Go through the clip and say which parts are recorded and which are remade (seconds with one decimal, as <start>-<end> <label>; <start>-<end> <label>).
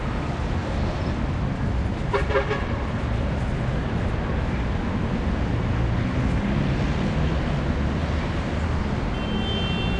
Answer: 0.0-10.0 recorded